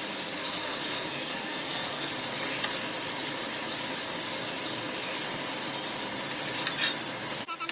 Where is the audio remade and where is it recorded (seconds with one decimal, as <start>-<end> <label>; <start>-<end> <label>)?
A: 0.0-0.4 recorded; 0.4-2.1 remade; 2.1-7.7 recorded